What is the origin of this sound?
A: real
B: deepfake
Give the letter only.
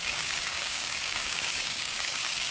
B